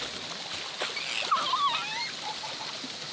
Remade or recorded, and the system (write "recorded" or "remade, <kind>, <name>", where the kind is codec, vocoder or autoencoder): recorded